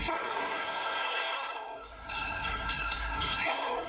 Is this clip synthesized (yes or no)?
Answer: yes